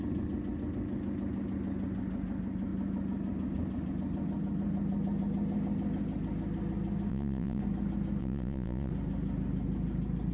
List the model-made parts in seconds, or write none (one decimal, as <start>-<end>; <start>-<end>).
7.1-7.6; 8.2-8.9